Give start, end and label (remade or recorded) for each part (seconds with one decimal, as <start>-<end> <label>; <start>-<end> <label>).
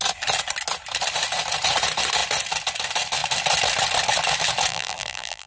0.0-4.7 recorded; 4.7-5.5 remade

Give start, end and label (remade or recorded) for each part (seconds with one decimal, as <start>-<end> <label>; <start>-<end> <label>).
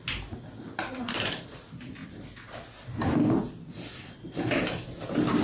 0.0-5.4 recorded